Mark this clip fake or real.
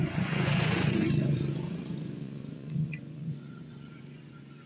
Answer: fake